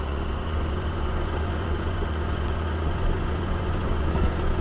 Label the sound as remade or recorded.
remade